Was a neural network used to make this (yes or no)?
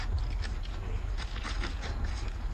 no